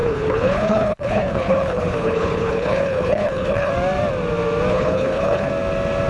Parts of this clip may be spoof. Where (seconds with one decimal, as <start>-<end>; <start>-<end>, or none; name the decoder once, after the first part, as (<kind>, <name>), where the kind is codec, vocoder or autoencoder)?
0.0-3.7 (codec, HILCodec); 4.7-5.5